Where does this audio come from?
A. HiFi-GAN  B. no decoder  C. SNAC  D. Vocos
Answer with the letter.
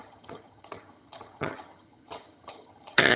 A